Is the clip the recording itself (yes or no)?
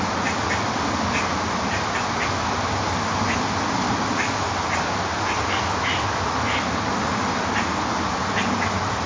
yes